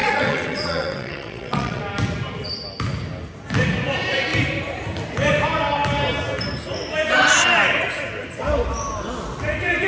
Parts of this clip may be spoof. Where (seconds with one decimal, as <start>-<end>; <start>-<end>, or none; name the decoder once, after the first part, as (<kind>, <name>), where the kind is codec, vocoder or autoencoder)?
0.0-1.8 (vocoder, WaveNeXt)